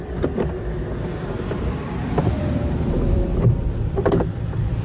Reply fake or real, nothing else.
fake